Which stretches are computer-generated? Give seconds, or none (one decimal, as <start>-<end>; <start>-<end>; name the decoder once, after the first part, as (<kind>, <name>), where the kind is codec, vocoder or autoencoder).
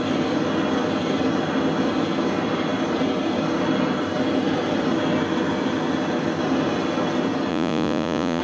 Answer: 7.5-8.4 (vocoder, Vocos)